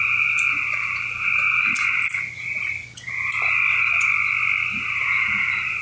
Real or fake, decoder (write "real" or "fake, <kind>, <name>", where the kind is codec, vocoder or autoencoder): real